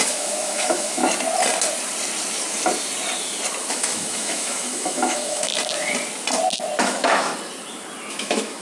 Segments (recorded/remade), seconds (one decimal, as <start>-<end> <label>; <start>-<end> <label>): 0.0-1.0 remade; 1.0-3.7 recorded; 3.7-5.5 remade; 5.5-6.8 recorded; 6.8-7.3 remade; 7.3-8.1 recorded; 8.1-8.6 remade